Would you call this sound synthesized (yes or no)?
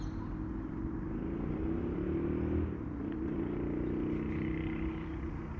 no